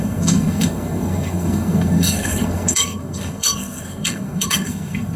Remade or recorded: remade